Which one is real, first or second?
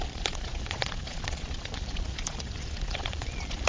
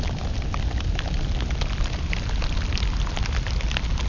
second